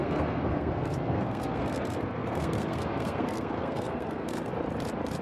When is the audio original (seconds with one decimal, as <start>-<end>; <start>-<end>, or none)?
4.5-5.2